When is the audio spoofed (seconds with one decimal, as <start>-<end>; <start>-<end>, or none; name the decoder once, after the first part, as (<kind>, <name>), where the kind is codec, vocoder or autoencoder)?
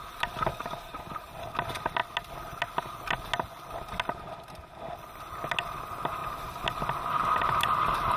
none